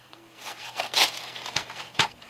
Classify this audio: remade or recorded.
remade